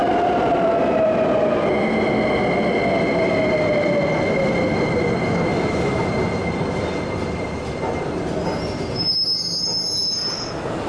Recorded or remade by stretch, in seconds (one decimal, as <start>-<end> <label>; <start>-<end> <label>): 0.0-10.9 recorded